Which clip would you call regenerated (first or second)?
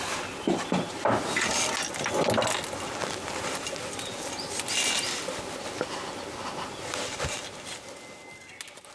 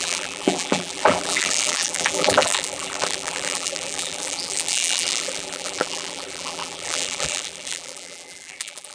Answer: second